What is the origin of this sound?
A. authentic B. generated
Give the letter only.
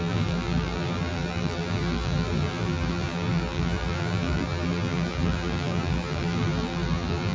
B